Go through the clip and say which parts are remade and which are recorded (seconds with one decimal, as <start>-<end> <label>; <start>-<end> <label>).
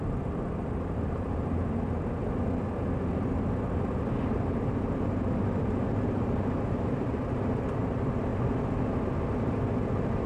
0.0-2.2 remade; 2.2-4.4 recorded; 4.4-8.3 remade; 8.3-9.3 recorded; 9.3-10.3 remade